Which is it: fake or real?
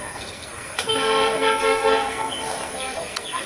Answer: fake